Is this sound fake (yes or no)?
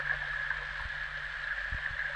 no